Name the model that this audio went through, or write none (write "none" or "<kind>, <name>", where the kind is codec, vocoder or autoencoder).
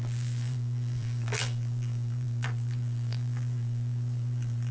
vocoder, BigVGAN v2